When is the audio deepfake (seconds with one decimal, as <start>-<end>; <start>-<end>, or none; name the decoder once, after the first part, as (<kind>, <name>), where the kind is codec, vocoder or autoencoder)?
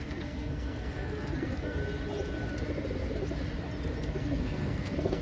0.0-1.8 (codec, SNAC); 4.0-5.2